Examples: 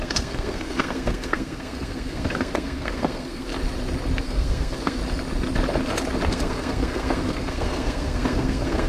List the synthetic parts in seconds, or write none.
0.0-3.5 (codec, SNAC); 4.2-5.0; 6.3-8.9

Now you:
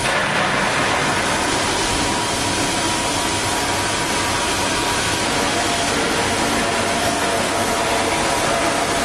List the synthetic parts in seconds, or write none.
7.0-7.5 (codec, SNAC)

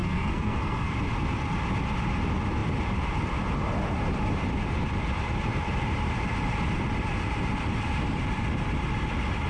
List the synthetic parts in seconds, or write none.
0.0-0.9 (codec, SNAC)

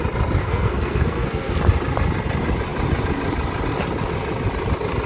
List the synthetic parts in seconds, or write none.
0.4-1.5 (codec, SNAC)

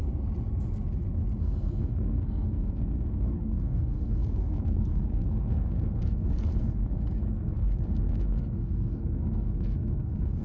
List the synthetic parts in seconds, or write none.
1.4-10.4 (codec, SNAC)

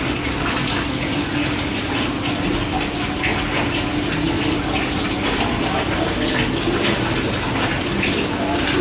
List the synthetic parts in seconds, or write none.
none